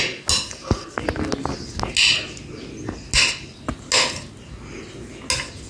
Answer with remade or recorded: recorded